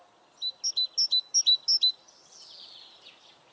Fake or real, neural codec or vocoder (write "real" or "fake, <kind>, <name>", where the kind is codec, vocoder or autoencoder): real